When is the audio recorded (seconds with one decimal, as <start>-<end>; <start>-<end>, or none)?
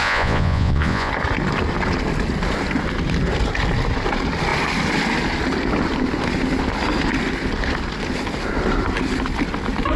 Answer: 1.1-10.0